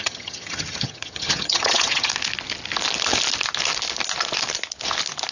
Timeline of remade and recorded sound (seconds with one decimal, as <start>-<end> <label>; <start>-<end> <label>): 0.0-2.1 remade; 2.1-5.3 recorded